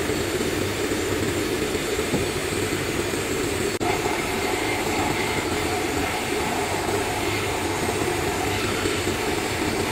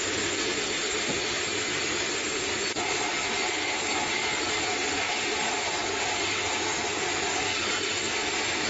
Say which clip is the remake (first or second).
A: first